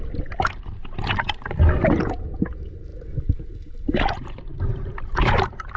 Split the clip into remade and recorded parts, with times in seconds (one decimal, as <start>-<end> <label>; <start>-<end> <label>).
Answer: 0.0-4.5 recorded; 4.5-5.8 remade

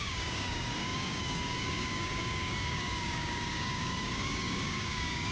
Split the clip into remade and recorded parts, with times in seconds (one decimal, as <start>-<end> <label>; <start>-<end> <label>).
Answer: 0.0-5.3 remade

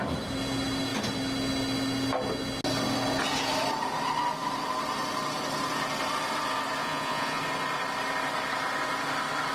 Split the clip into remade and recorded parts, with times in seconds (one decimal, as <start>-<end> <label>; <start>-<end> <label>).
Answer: 0.0-6.8 recorded; 6.8-7.4 remade; 7.4-9.5 recorded

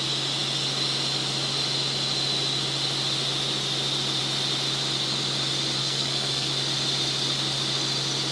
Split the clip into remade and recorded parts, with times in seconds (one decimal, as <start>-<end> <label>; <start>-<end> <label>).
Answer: 0.0-5.8 recorded; 5.8-6.5 remade; 6.5-8.3 recorded

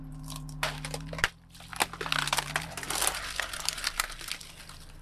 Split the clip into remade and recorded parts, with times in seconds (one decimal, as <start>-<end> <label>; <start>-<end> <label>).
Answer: 0.0-5.0 recorded

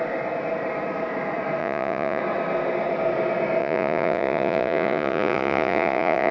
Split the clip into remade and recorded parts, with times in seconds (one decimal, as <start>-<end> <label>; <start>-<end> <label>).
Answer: 0.0-1.6 recorded; 1.6-2.2 remade; 2.2-3.6 recorded; 3.6-6.3 remade

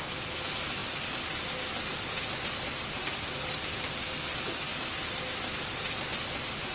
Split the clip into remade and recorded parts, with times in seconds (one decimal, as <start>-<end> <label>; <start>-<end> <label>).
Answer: 0.0-6.7 recorded

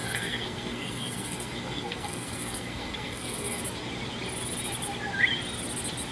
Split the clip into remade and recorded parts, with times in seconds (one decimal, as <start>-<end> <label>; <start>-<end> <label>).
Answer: 0.0-3.6 remade; 3.6-6.1 recorded